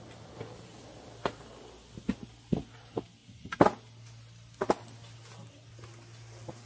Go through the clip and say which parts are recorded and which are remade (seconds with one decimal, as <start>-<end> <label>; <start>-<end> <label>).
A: 0.0-6.7 recorded